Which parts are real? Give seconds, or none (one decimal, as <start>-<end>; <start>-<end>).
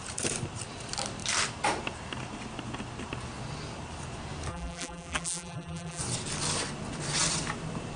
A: 0.0-4.5; 6.0-8.0